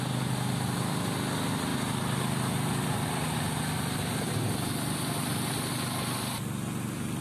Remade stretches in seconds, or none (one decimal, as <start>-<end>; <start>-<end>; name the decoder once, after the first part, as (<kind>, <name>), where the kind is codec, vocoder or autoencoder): none